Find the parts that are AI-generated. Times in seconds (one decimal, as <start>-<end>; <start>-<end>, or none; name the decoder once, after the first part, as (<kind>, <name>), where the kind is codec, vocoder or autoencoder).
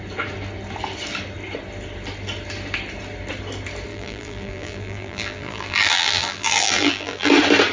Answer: 3.9-7.3 (vocoder, BigVGAN v2)